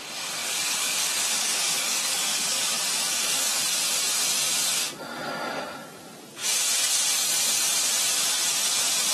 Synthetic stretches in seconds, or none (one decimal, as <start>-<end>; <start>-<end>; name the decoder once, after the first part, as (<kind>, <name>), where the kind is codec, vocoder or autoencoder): 0.4-3.6 (codec, DAC); 4.6-5.6

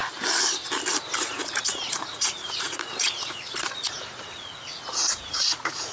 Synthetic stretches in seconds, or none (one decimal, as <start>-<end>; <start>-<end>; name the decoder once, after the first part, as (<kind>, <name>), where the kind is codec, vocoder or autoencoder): 1.2-5.9 (vocoder, Vocos)